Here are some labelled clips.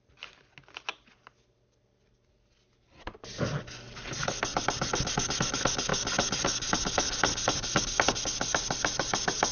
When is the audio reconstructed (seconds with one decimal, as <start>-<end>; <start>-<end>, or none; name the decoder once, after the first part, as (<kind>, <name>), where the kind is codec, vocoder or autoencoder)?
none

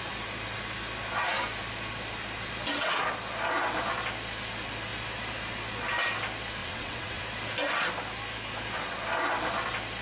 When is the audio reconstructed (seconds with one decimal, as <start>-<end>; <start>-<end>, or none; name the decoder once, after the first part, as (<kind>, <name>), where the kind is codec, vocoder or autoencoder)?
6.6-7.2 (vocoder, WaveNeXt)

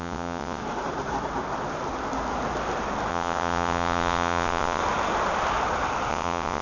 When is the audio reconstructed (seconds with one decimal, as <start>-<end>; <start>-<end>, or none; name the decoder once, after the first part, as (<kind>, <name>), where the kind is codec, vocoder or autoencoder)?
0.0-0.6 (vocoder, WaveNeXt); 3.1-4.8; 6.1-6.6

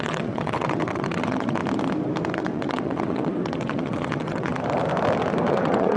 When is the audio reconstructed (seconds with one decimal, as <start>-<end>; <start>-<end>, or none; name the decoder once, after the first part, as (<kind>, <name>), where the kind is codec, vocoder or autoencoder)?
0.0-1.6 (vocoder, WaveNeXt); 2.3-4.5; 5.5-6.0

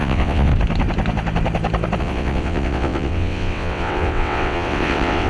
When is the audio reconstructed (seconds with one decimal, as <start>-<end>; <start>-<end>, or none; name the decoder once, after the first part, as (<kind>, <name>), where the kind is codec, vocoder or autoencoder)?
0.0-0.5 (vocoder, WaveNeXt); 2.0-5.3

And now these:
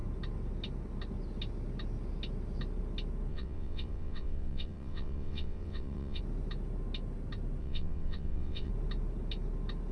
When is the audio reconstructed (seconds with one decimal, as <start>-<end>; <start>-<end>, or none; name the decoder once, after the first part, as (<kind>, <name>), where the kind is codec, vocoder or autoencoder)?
3.3-6.2 (vocoder, WaveNeXt); 7.6-8.7